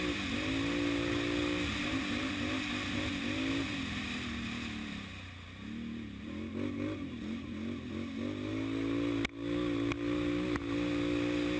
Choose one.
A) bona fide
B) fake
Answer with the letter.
A